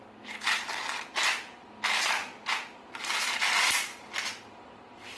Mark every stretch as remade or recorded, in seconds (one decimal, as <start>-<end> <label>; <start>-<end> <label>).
0.0-5.2 recorded